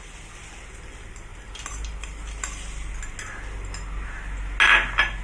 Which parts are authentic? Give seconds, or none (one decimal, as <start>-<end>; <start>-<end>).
0.0-1.3; 2.9-5.2